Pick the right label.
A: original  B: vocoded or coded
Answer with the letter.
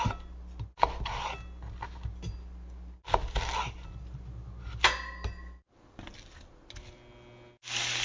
A